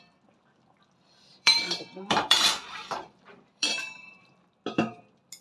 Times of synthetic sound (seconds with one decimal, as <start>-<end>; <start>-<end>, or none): 1.3-4.5